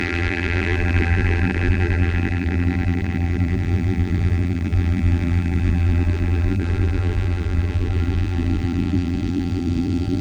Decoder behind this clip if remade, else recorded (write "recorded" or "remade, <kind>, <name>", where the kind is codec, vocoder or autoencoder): remade, vocoder, BigVGAN v2